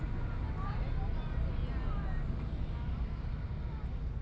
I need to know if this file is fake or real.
real